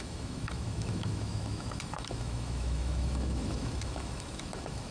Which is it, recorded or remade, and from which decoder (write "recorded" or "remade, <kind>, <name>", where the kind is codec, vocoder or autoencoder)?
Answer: remade, autoencoder, DAC-VAE